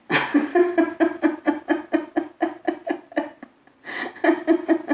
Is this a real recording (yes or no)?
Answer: yes